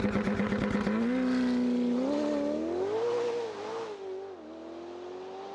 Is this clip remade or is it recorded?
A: recorded